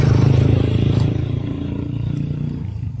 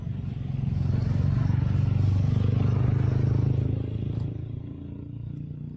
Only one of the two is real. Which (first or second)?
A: second